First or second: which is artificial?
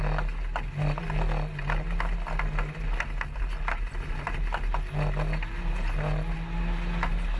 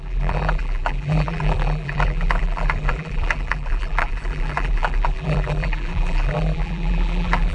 second